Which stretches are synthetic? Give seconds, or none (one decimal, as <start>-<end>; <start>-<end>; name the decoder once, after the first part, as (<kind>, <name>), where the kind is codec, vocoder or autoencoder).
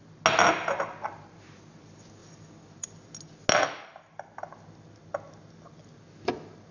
none